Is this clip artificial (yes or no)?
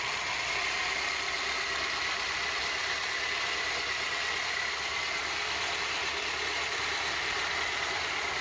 yes